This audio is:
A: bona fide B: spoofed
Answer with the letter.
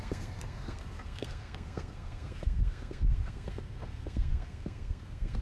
B